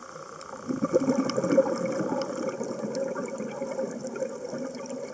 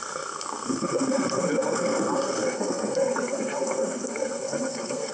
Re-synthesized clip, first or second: second